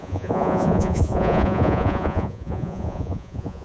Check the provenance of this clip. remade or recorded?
remade